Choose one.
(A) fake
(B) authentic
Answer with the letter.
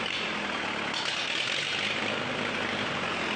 B